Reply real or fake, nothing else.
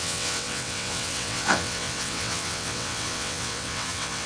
fake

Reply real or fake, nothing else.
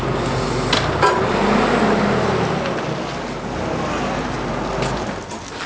real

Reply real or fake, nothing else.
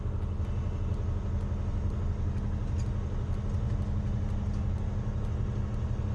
real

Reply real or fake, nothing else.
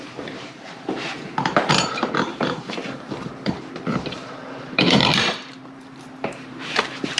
fake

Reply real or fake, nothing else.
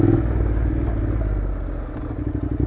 real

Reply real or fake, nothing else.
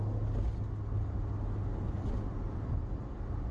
real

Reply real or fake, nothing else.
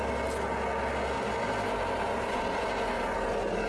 real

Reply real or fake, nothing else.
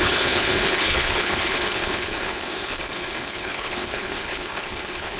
fake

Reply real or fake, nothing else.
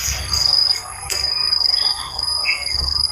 fake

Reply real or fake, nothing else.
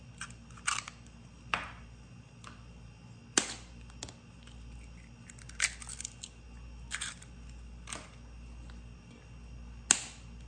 real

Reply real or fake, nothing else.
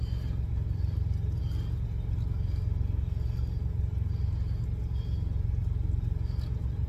real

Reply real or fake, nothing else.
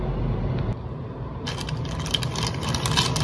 real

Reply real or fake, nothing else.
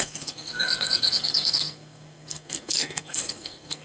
fake